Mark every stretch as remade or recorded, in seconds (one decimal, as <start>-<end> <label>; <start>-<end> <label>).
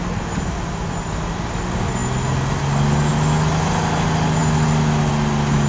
0.0-5.7 recorded